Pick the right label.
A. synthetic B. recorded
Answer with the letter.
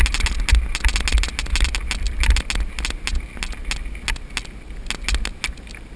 B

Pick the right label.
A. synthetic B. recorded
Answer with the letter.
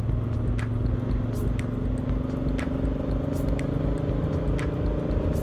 B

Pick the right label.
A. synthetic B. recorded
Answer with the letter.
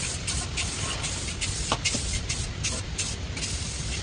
B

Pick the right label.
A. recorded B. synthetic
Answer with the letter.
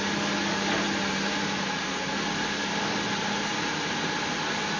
A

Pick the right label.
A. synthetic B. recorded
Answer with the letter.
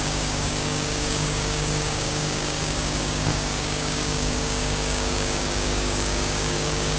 A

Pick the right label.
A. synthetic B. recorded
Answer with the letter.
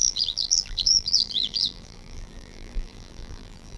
A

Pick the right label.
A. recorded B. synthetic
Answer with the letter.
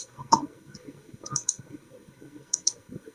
B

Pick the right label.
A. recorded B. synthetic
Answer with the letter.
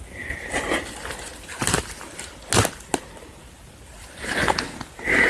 A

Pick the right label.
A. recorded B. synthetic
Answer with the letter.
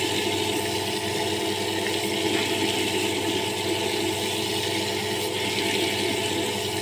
A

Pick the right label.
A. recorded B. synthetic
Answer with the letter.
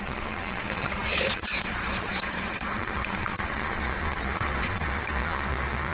B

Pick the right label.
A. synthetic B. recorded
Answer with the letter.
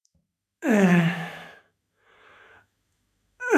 A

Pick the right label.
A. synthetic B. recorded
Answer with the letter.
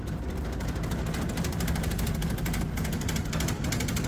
B